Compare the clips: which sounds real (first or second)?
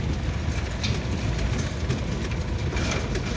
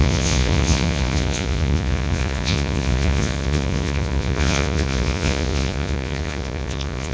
first